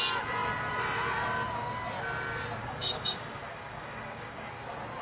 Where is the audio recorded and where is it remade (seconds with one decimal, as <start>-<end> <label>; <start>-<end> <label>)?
0.0-2.6 recorded; 2.6-4.5 remade; 4.5-5.0 recorded